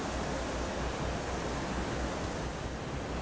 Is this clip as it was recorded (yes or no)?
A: yes